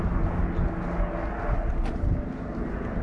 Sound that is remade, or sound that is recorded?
recorded